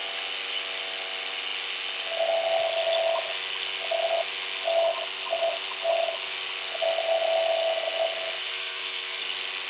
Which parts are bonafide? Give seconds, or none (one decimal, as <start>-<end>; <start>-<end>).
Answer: 0.0-8.4; 9.2-9.7